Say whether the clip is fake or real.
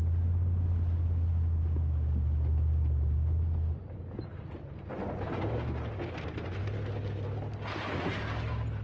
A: real